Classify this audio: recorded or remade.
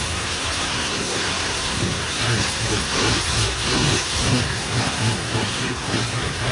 remade